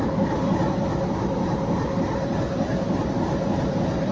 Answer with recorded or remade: recorded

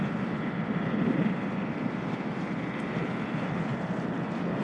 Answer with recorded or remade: recorded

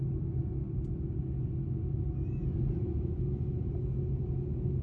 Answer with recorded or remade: recorded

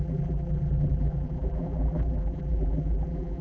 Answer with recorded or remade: remade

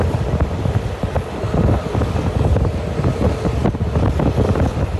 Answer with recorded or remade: recorded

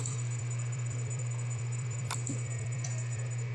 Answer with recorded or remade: remade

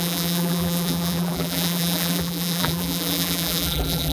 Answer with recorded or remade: remade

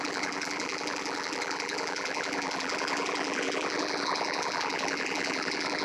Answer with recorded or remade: remade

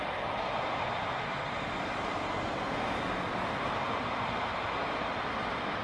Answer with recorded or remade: recorded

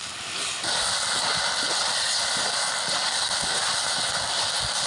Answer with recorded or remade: recorded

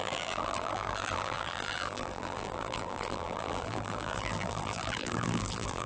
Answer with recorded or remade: remade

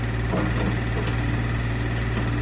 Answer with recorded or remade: recorded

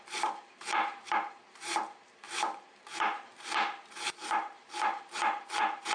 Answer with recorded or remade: remade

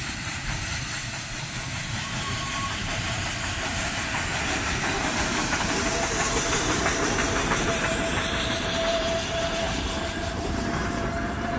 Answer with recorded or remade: remade